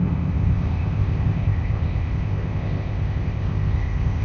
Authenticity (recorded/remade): remade